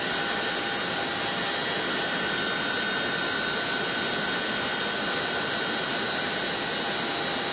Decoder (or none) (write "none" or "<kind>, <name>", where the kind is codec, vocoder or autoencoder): none